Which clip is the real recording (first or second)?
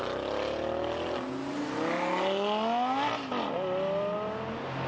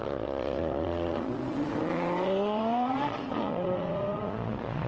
first